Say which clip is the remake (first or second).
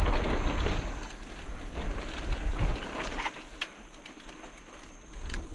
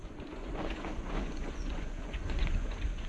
second